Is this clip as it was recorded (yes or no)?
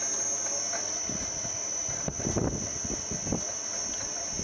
no